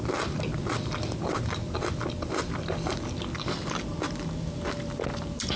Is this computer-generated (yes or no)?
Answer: no